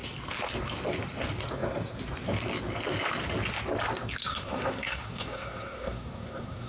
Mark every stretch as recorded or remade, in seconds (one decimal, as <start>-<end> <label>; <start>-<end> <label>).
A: 0.0-4.2 recorded; 4.2-6.7 remade